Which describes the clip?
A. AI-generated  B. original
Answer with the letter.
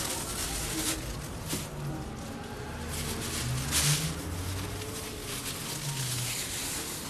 B